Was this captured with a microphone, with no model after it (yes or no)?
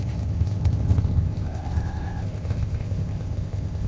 no